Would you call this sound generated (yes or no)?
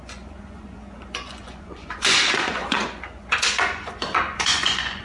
yes